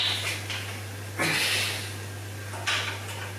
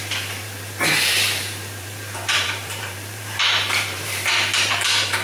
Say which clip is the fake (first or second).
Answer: second